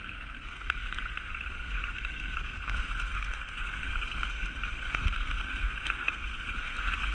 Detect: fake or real fake